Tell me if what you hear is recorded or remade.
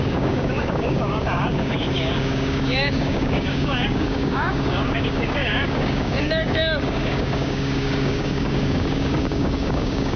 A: remade